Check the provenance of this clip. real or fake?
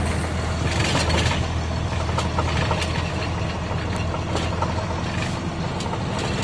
real